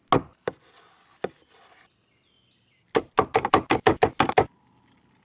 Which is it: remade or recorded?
recorded